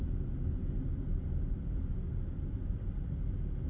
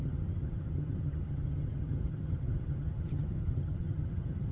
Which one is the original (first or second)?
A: first